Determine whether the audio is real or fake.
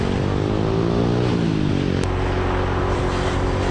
real